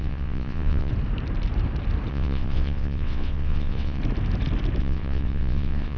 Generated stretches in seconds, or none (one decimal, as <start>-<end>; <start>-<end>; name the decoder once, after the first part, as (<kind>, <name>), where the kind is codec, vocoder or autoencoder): 0.0-0.9 (vocoder, WaveNeXt); 2.1-4.0; 4.8-6.0